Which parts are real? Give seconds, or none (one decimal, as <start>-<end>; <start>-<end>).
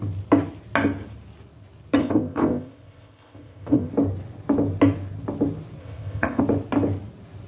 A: 0.0-2.0; 3.9-5.8; 6.4-7.5